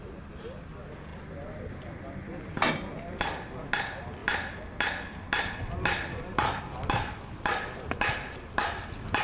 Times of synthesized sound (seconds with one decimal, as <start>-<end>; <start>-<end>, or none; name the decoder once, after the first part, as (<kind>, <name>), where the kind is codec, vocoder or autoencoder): none